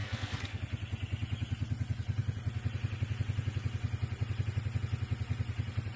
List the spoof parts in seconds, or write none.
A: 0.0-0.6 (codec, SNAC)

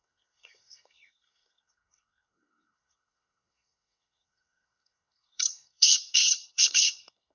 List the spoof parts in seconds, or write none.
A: 0.0-7.3 (codec, SNAC)

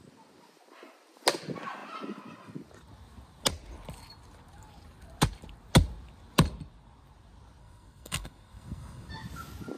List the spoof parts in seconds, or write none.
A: 7.6-9.1 (codec, SNAC)

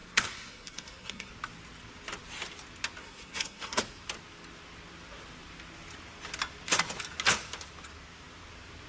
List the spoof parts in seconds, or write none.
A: 0.0-1.3 (codec, SNAC); 3.0-3.8

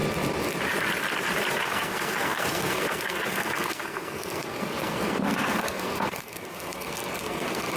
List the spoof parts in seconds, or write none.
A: 1.5-7.8 (codec, SNAC)

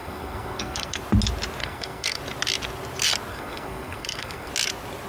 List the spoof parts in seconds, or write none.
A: 0.0-1.0 (codec, SNAC); 1.6-2.2; 3.3-4.5

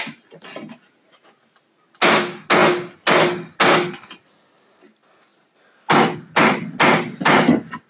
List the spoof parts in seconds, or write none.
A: none

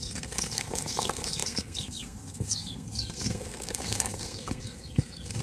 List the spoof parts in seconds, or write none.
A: 0.0-5.4 (codec, SNAC)